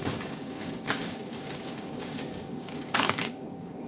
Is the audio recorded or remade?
remade